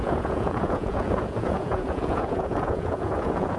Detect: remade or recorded remade